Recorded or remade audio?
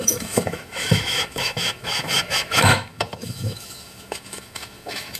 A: remade